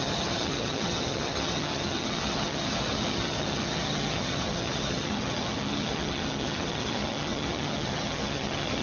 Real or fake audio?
fake